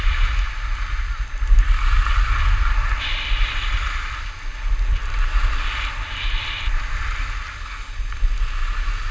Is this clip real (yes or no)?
yes